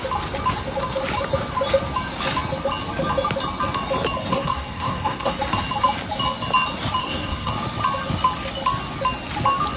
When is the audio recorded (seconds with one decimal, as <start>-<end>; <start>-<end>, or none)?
0.0-4.3; 5.3-7.0; 7.5-9.8